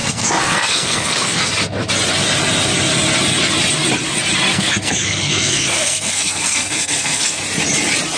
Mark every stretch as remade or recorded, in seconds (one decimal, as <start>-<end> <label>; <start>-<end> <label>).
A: 0.0-1.5 remade; 1.5-4.5 recorded; 4.5-7.4 remade; 7.4-8.2 recorded